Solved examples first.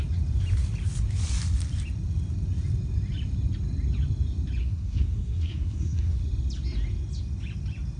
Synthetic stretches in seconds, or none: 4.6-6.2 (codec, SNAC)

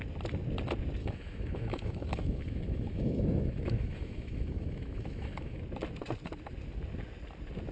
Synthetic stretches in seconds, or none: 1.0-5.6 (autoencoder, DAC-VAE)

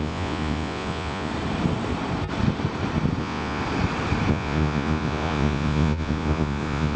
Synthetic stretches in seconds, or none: 0.0-1.3 (vocoder, Vocos); 3.2-3.6; 4.3-7.0

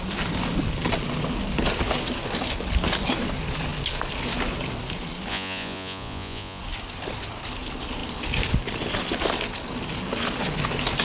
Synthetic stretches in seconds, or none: 5.3-6.6 (vocoder, Vocos)

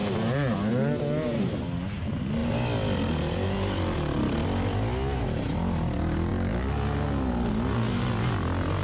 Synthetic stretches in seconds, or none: none

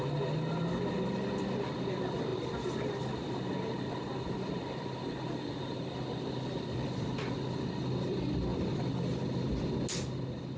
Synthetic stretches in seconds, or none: none

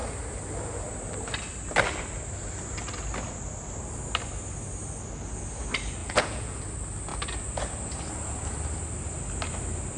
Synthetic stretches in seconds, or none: 6.0-6.6 (vocoder, Vocos)